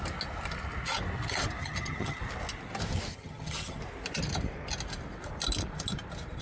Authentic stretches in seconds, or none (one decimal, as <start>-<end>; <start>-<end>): 0.0-1.6; 2.2-3.1; 3.8-6.4